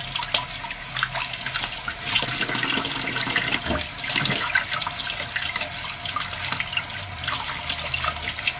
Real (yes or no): yes